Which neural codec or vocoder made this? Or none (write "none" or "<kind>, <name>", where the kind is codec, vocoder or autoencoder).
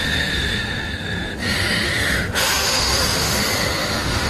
autoencoder, DAC-VAE